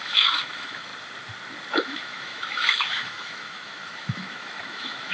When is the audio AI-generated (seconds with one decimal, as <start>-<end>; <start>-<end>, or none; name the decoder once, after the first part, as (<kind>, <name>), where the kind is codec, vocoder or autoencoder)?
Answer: 0.0-0.9 (autoencoder, DAC-VAE); 1.7-5.1